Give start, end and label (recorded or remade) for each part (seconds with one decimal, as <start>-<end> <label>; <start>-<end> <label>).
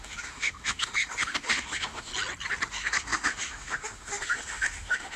0.0-2.1 remade; 2.1-2.7 recorded; 2.7-5.2 remade